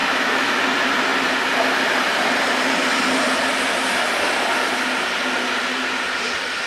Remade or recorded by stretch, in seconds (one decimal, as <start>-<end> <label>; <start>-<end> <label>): 0.0-0.6 remade; 0.6-6.7 recorded